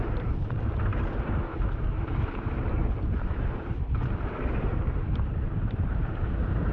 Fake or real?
fake